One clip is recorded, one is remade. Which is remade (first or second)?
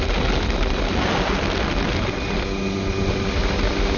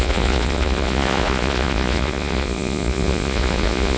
second